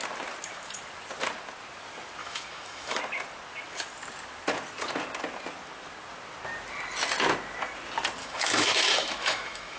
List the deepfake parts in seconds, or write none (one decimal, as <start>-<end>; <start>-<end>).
2.2-3.0; 8.2-9.8